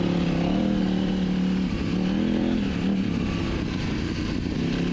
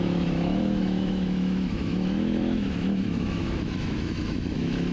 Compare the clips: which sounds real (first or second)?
first